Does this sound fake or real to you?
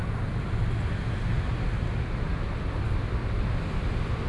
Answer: real